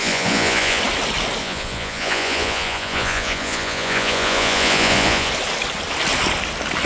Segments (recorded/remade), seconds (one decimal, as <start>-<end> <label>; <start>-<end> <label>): 0.0-0.8 remade; 0.8-1.4 recorded; 1.4-5.3 remade; 5.3-6.9 recorded

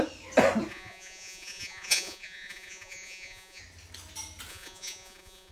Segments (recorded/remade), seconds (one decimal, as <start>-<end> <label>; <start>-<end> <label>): 0.0-0.7 recorded; 0.7-3.6 remade; 3.6-4.5 recorded; 4.5-5.5 remade

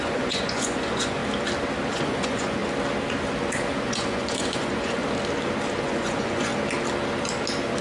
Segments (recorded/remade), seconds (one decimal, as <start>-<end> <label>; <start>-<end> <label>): 0.0-1.2 remade; 1.2-1.9 recorded; 1.9-2.6 remade; 2.6-3.8 recorded; 3.8-5.0 remade; 5.0-5.8 recorded; 5.8-6.5 remade; 6.5-7.8 recorded

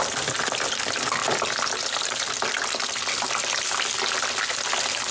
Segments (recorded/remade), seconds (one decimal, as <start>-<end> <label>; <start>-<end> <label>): 0.0-5.1 recorded

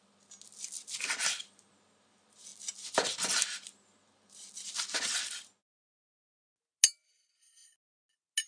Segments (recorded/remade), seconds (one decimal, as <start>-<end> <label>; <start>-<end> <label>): 0.0-8.5 recorded

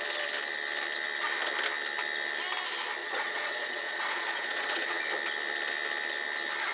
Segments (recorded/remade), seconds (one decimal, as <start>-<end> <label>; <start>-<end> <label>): 0.0-3.0 recorded; 3.0-5.0 remade; 5.0-6.7 recorded

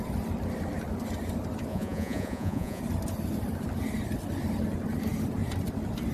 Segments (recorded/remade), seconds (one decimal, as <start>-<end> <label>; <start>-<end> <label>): 0.0-1.7 recorded; 1.7-2.8 remade; 2.8-6.1 recorded